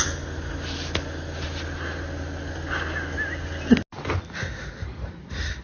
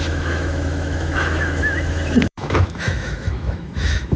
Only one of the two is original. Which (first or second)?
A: first